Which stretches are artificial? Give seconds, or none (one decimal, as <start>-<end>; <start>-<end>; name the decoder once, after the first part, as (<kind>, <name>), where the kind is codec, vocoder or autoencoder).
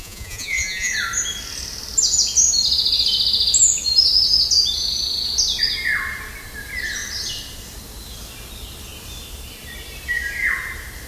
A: 0.0-0.9 (vocoder, Vocos)